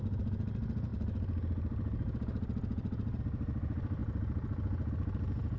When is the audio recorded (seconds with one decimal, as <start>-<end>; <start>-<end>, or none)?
0.0-5.6